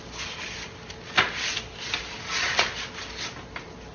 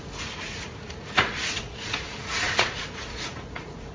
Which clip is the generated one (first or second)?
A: second